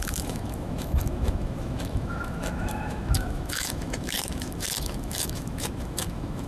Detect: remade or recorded remade